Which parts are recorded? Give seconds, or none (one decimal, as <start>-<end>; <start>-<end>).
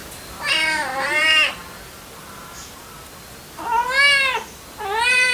0.0-0.5; 1.6-4.8